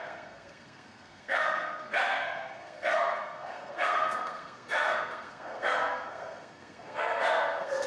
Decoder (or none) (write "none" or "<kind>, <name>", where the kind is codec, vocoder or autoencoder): codec, SNAC